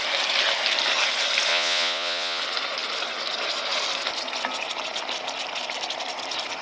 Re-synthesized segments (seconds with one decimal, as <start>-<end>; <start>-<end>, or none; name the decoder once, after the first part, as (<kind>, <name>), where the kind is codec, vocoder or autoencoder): 1.5-2.4 (vocoder, Vocos)